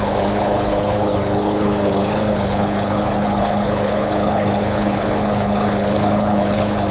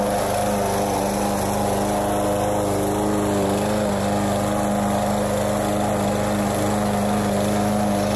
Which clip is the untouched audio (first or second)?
second